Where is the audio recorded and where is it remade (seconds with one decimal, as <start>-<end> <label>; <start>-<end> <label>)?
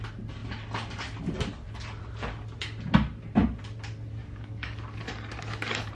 0.0-4.2 recorded; 4.2-5.9 remade